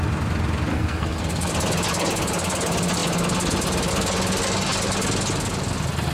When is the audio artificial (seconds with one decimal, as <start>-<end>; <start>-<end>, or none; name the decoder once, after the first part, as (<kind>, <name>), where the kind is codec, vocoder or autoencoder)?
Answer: 0.7-1.5 (codec, SNAC)

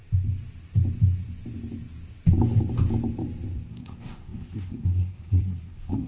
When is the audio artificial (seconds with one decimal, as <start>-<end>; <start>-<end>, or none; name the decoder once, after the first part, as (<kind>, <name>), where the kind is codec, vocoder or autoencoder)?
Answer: 3.7-6.1 (codec, SNAC)

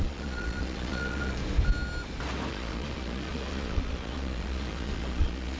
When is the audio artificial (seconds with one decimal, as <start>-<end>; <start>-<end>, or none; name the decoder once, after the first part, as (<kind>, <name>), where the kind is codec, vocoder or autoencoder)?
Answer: 0.0-1.4 (vocoder, Vocos); 2.5-5.6

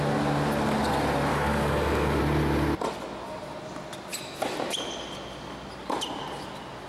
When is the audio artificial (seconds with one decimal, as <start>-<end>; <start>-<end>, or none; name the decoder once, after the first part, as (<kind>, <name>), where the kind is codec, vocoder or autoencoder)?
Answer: 1.3-2.2 (codec, DAC)

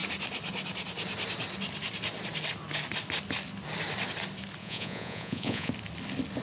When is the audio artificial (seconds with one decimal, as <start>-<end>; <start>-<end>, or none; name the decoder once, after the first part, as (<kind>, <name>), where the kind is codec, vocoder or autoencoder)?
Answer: 4.6-5.7 (vocoder, Vocos)

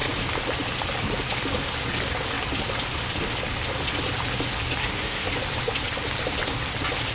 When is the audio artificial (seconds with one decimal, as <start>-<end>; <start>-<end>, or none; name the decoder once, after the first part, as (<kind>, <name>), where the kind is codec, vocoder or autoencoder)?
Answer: 4.8-5.3 (codec, SNAC)

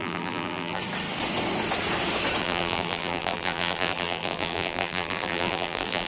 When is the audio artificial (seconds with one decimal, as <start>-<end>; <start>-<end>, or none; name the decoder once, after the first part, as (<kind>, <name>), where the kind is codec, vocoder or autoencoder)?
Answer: 0.0-0.8 (vocoder, BigVGAN v2); 2.4-6.1